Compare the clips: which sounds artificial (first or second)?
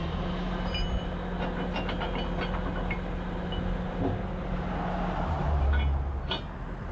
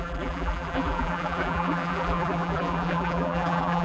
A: second